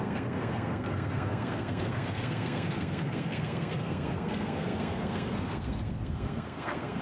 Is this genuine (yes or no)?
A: no